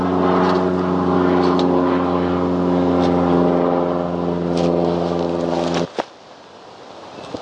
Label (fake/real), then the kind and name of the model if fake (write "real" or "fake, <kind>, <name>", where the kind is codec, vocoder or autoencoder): real